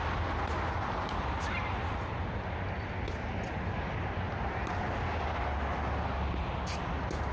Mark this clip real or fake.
real